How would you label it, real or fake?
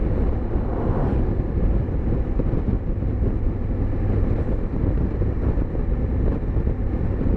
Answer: real